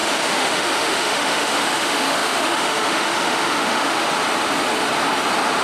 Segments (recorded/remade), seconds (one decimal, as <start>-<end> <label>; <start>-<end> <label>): 0.0-4.1 remade; 4.1-5.6 recorded